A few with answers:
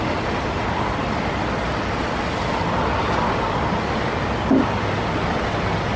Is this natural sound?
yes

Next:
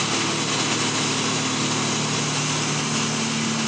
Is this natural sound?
yes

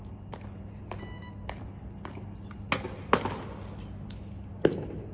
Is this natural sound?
yes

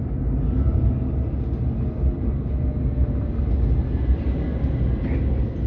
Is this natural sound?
yes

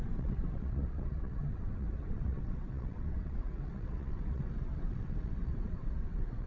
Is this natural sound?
no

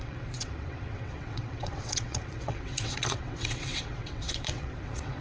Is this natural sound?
no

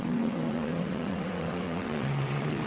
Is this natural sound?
no